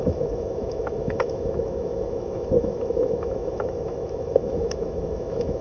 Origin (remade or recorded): remade